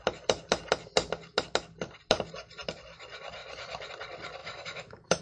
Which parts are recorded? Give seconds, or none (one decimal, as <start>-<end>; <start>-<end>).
0.0-4.4